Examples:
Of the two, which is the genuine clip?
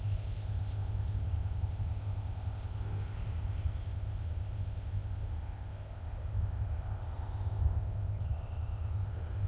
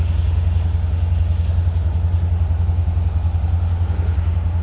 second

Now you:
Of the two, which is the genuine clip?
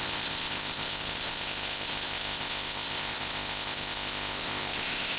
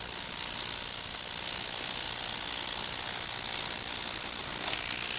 second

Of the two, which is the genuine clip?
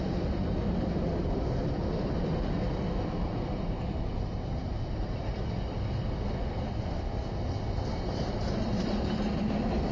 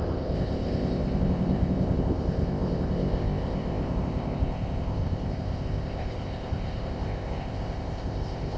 first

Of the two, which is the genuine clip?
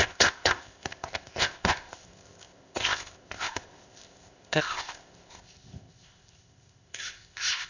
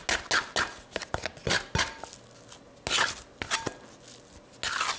second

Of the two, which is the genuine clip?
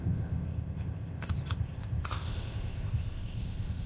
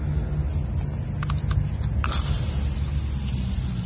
second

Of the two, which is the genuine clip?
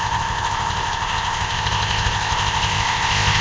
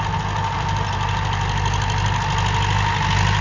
second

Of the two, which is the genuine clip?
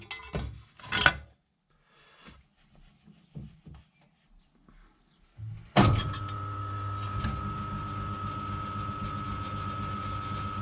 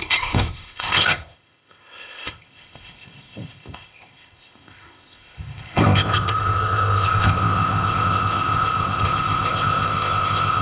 first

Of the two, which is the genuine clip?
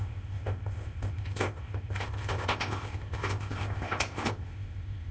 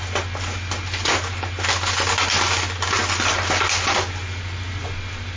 second